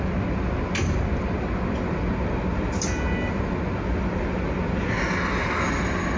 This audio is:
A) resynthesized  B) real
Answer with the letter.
B